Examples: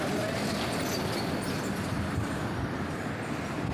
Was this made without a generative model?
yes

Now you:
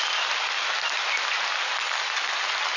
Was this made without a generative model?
yes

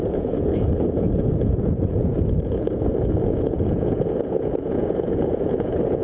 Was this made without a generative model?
no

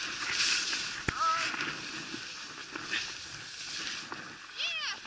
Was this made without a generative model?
yes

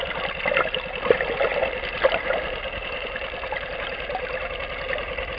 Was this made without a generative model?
yes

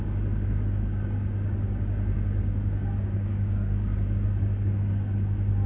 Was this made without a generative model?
no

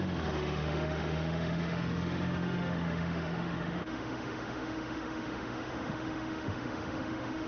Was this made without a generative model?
no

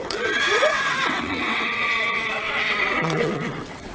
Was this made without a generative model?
no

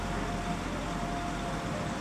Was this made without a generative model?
yes